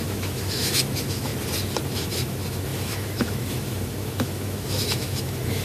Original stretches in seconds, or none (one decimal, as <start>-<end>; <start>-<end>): 1.3-1.9